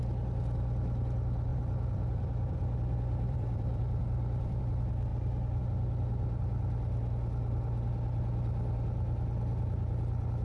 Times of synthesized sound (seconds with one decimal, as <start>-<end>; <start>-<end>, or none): 1.5-4.6